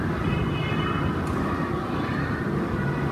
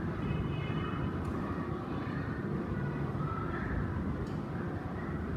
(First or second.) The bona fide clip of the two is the first